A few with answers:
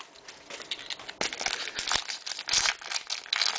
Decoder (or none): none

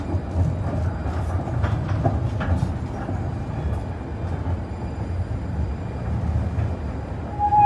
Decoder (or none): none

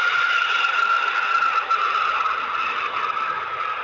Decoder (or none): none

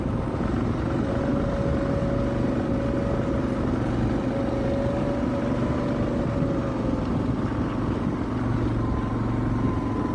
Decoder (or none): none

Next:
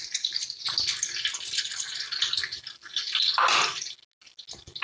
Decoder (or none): none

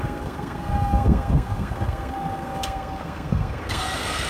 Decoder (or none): codec, SNAC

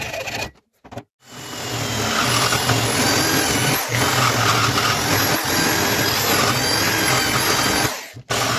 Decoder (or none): none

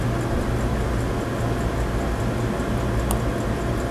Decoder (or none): none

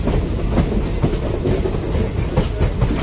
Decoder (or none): none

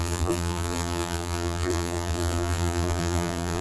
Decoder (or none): vocoder, BigVGAN v2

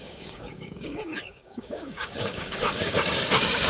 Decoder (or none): codec, DAC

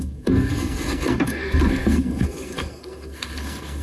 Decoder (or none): codec, SNAC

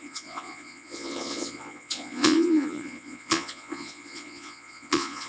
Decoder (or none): vocoder, Vocos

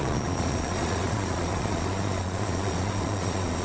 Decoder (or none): vocoder, Vocos